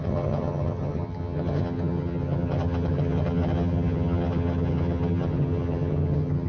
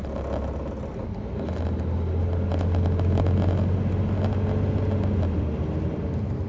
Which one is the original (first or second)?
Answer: second